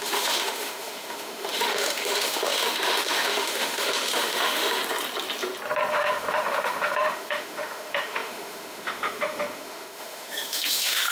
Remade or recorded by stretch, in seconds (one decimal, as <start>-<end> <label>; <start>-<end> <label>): 0.0-4.8 remade; 4.8-5.9 recorded; 5.9-11.1 remade